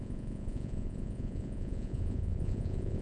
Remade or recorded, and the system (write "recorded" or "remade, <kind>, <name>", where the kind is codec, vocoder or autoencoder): remade, vocoder, Vocos